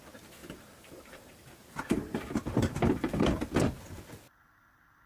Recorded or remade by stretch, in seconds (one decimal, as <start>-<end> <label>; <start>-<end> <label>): 0.0-0.4 recorded; 0.4-3.5 remade; 3.5-5.1 recorded